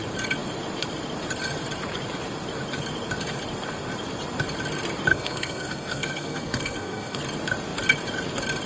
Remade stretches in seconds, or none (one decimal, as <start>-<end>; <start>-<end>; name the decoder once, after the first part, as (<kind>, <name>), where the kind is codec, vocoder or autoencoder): 5.1-7.2 (codec, SNAC)